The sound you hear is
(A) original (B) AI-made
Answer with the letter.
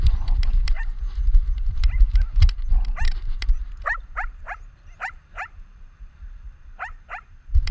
B